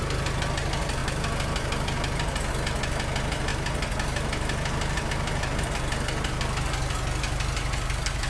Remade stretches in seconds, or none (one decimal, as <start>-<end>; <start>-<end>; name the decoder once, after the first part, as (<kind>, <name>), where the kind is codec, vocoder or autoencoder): none